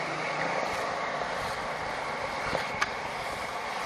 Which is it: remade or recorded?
recorded